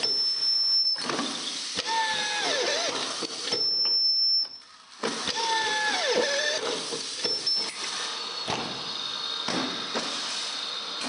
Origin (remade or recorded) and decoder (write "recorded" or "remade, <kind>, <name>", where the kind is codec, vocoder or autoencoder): recorded